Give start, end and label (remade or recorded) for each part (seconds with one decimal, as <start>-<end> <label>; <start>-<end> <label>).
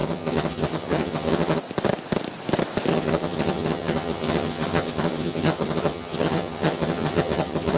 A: 0.0-1.6 remade; 1.6-2.9 recorded; 2.9-7.8 remade